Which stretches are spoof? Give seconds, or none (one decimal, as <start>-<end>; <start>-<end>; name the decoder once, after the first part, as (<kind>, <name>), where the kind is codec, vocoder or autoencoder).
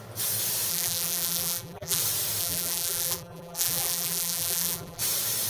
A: 0.7-2.0 (vocoder, BigVGAN v2); 2.4-5.0